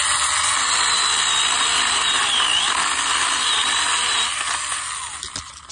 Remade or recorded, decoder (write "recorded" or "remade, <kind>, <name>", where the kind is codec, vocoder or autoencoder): recorded